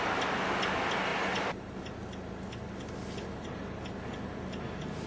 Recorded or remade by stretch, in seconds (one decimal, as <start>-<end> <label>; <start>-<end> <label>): 0.0-5.1 recorded